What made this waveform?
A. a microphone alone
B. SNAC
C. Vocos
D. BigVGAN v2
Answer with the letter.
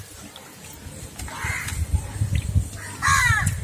A